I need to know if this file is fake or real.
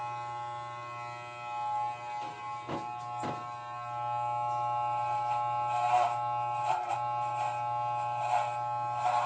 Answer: real